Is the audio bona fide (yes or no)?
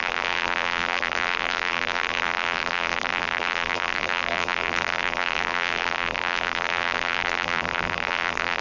no